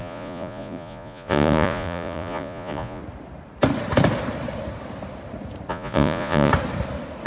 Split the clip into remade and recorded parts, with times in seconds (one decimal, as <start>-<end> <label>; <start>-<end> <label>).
0.0-3.0 remade; 3.0-5.7 recorded; 5.7-6.5 remade; 6.5-7.3 recorded